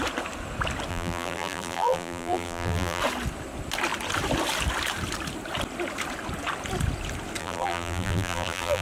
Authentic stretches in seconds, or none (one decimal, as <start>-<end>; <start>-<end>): 0.0-0.9; 3.0-7.4